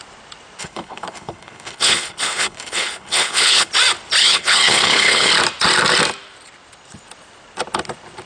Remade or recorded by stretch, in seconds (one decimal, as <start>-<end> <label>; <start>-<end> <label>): 0.0-0.6 recorded; 0.6-3.7 remade; 3.7-4.2 recorded; 4.2-5.3 remade; 5.3-8.3 recorded